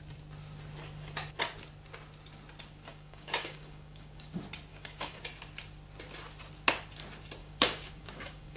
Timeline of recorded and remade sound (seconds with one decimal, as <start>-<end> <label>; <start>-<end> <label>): 0.0-2.9 recorded; 2.9-4.3 remade; 4.3-4.7 recorded; 4.7-5.2 remade; 5.2-7.4 recorded; 7.4-8.6 remade